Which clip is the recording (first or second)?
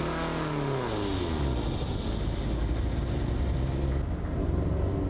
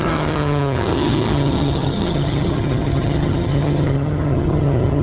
first